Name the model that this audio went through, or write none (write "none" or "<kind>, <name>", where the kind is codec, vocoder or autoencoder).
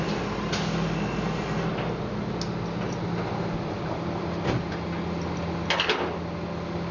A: none